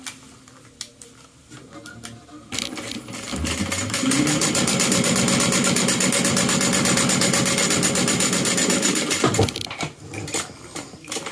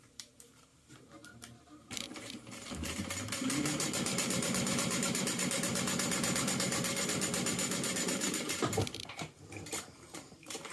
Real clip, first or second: first